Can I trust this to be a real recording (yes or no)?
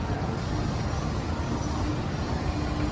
yes